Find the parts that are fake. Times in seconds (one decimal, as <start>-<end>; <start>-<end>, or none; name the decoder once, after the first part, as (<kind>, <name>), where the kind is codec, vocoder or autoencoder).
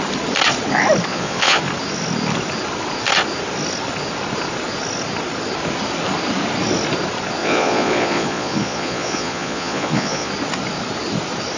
1.1-1.6 (vocoder, Vocos); 7.4-10.3